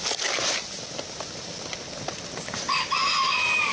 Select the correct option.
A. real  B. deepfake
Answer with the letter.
A